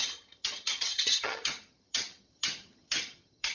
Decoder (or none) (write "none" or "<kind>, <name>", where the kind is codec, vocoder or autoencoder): vocoder, HiFi-GAN